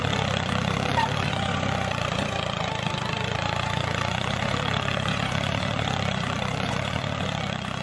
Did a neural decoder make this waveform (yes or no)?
yes